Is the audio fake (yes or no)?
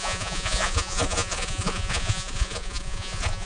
yes